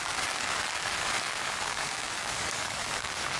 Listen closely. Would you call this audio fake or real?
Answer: fake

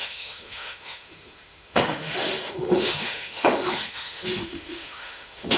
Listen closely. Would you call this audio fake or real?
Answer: fake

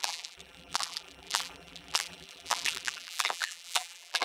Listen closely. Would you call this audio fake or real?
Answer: fake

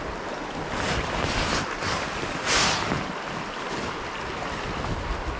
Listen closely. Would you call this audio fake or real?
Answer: real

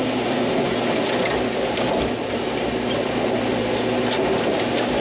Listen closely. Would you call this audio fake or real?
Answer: real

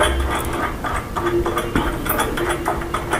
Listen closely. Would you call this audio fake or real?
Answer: real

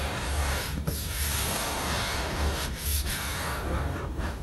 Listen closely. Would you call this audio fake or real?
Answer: fake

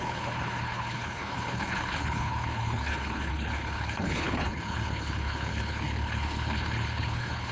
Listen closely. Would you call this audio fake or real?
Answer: fake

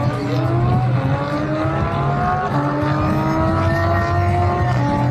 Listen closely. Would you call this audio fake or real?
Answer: real